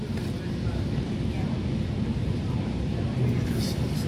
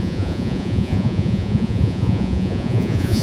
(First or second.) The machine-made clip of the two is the second